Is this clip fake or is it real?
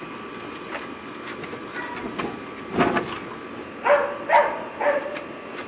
real